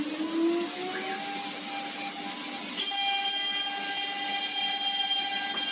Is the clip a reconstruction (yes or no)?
no